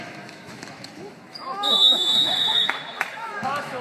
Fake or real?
fake